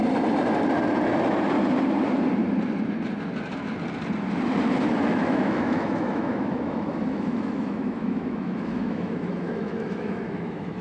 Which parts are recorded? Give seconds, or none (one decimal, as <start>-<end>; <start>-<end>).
0.0-5.0